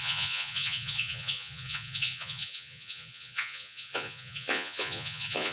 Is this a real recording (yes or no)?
no